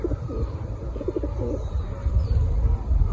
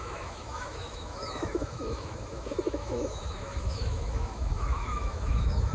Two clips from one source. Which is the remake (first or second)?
second